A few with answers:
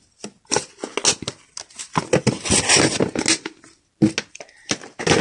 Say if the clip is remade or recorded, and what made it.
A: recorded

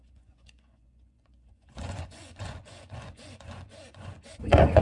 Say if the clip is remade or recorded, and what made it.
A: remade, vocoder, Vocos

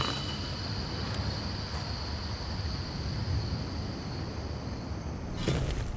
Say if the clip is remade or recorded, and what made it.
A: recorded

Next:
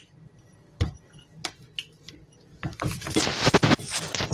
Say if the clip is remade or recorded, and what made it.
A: remade, vocoder, BigVGAN v2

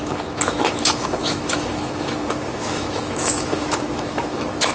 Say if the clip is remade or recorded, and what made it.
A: remade, autoencoder, DAC-VAE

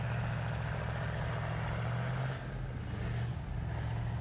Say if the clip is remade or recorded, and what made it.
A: recorded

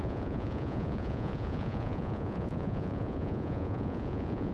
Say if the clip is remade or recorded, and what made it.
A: remade, vocoder, Vocos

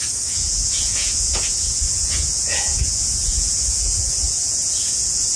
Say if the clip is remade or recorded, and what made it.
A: remade, vocoder, Vocos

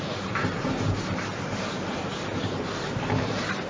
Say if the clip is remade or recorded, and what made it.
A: recorded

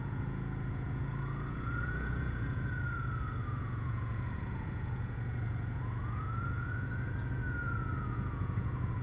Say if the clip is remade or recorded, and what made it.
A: remade, vocoder, Vocos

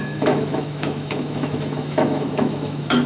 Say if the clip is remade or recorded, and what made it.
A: remade, autoencoder, DAC-VAE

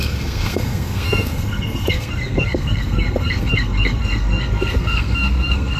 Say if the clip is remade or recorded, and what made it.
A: remade, codec, SNAC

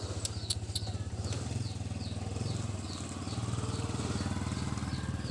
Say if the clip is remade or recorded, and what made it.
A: recorded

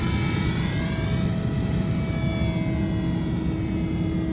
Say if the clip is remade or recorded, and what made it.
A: recorded